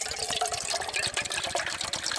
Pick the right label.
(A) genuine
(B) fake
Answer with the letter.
A